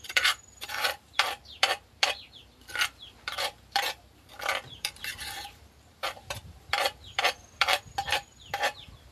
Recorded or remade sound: remade